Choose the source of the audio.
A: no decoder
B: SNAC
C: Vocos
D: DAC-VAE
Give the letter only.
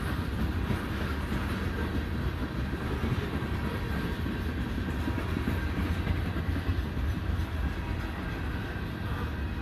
A